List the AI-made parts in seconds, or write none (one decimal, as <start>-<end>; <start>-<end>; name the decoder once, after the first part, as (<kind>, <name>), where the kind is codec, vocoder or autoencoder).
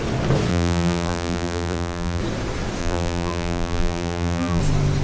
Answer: 0.5-2.2 (vocoder, BigVGAN v2); 2.8-4.6